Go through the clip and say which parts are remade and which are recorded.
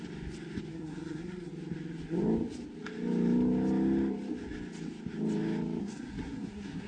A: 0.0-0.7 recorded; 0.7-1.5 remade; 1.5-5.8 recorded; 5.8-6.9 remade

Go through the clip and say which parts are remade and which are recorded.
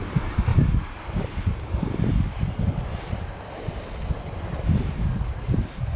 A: 0.0-6.0 recorded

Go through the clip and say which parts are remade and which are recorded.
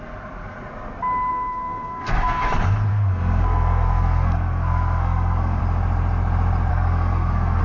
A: 0.0-1.3 recorded; 1.3-2.4 remade; 2.4-2.9 recorded; 2.9-5.6 remade; 5.6-6.7 recorded; 6.7-7.6 remade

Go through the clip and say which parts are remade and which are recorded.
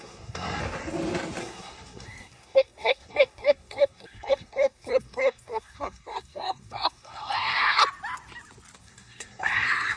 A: 0.0-0.6 remade; 0.6-1.4 recorded; 1.4-7.8 remade; 7.8-8.8 recorded; 8.8-10.0 remade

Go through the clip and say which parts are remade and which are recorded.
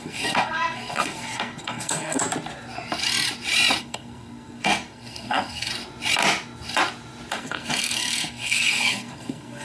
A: 0.0-2.2 remade; 2.2-3.8 recorded; 3.8-5.7 remade; 5.7-7.3 recorded; 7.3-9.6 remade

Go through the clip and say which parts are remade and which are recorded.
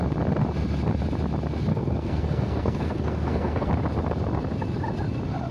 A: 0.0-1.7 recorded; 1.7-3.7 remade; 3.7-5.5 recorded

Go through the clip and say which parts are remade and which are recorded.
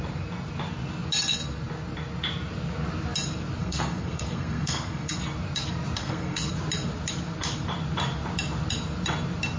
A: 0.0-3.6 recorded; 3.6-5.2 remade; 5.2-6.0 recorded; 6.0-6.5 remade; 6.5-9.6 recorded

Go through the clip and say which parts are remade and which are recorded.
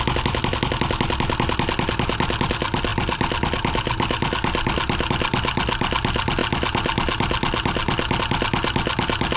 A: 0.0-9.4 recorded